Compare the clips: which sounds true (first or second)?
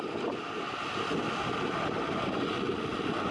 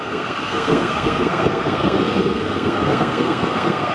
first